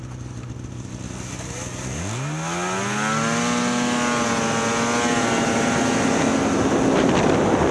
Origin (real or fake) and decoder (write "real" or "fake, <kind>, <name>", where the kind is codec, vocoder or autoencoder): real